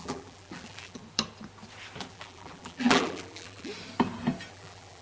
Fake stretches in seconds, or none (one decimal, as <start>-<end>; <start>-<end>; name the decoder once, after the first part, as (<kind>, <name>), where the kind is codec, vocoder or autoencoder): 0.0-1.0 (vocoder, BigVGAN v2); 2.1-3.7; 4.5-5.0